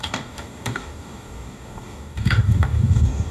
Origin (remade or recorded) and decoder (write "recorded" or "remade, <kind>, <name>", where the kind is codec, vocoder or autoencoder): remade, codec, DAC